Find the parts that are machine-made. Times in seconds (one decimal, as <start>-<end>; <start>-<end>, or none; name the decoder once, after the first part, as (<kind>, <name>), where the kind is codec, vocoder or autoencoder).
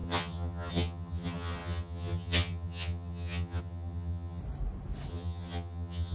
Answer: 0.0-4.4 (vocoder, HiFi-GAN); 5.1-6.1